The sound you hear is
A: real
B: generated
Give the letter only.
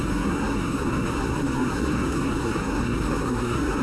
B